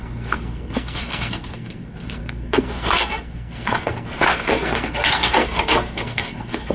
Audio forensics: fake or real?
fake